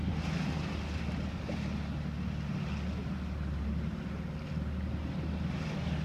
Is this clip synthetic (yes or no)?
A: no